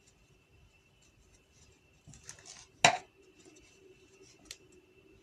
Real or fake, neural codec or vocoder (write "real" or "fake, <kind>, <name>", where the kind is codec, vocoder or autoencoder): real